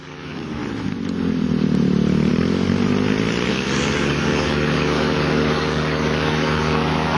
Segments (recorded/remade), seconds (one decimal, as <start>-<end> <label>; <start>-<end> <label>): 0.0-0.6 remade; 0.6-2.3 recorded; 2.3-2.7 remade; 2.7-3.5 recorded; 3.5-7.2 remade